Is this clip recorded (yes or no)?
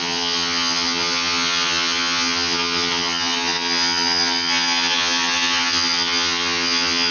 no